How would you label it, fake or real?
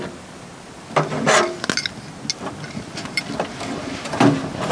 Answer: real